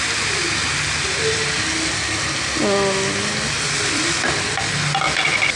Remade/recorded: recorded